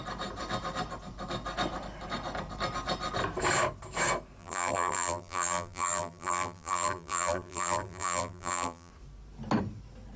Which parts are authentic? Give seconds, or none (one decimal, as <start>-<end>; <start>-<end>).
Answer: 0.0-4.4; 8.9-10.2